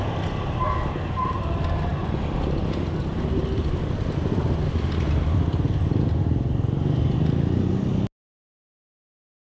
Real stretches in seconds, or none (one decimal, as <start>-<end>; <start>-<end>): 0.0-9.5